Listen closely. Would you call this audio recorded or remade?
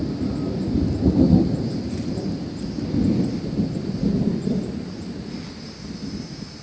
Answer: recorded